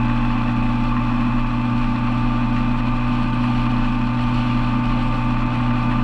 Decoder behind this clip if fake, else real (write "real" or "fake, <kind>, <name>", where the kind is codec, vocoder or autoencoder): real